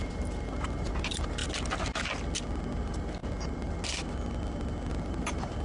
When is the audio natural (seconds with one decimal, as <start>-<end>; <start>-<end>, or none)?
1.4-2.8; 3.2-5.0